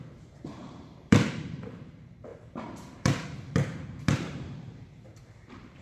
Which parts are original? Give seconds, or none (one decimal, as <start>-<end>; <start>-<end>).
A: none